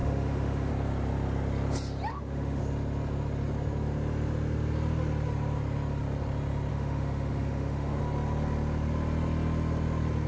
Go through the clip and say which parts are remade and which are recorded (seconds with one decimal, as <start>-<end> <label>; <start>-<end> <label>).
0.0-0.7 remade; 0.7-2.1 recorded; 2.1-2.6 remade; 2.6-6.7 recorded; 6.7-8.0 remade; 8.0-10.3 recorded